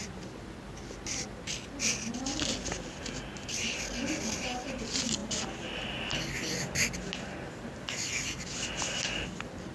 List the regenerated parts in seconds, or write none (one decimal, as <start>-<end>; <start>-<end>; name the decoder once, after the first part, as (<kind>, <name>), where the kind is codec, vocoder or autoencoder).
none